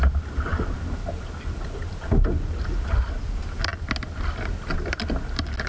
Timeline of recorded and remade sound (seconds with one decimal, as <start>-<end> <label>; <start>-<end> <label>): 0.0-5.7 recorded